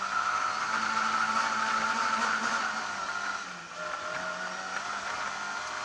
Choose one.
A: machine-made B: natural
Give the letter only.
B